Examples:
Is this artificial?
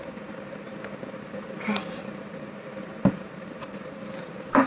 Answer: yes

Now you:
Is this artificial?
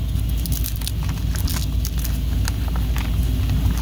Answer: no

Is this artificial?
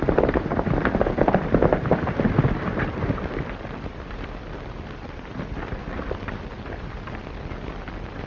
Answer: yes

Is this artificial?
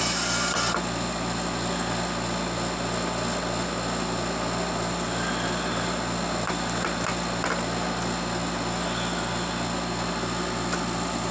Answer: no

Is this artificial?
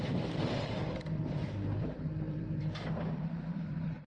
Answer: yes